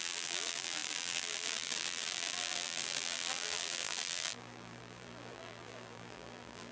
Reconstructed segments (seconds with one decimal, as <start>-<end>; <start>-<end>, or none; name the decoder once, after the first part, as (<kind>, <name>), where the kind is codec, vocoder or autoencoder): 0.0-6.7 (vocoder, BigVGAN v2)